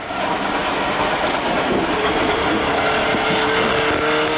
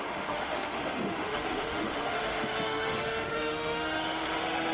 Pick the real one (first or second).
first